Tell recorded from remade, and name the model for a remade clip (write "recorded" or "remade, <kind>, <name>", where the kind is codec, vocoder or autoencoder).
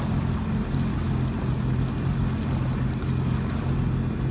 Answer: recorded